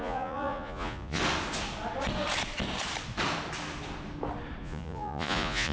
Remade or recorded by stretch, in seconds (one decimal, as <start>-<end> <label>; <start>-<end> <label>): 0.0-1.2 remade; 1.2-4.6 recorded; 4.6-5.7 remade